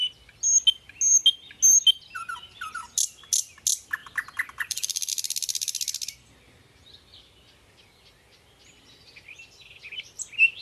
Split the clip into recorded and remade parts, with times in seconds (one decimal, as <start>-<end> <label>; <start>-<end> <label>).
0.0-4.0 recorded; 4.0-5.1 remade; 5.1-10.6 recorded

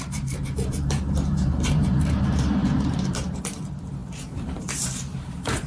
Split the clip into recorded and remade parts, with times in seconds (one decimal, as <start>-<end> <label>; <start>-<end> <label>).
0.0-5.7 remade

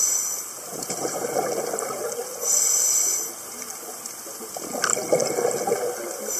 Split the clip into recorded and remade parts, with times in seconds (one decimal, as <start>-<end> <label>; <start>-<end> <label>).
0.0-0.7 recorded; 0.7-1.4 remade; 1.4-6.4 recorded

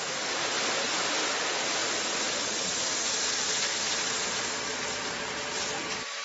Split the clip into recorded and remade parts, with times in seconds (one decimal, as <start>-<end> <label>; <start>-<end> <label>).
0.0-6.2 recorded

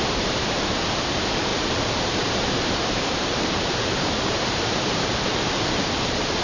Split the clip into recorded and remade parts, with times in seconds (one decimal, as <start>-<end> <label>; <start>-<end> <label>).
0.0-6.4 remade